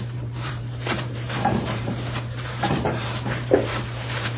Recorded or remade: remade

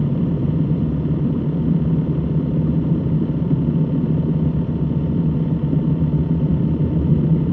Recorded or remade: remade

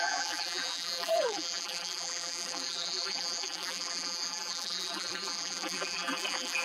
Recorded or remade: remade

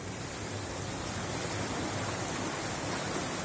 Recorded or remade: remade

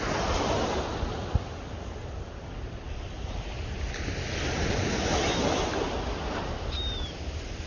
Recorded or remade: recorded